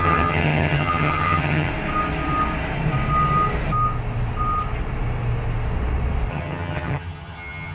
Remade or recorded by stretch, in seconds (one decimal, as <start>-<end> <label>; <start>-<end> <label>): 0.0-1.7 remade; 1.7-6.3 recorded; 6.3-7.7 remade